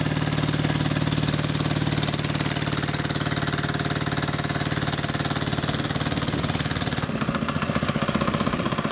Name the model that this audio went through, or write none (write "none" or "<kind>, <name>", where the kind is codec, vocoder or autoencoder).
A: none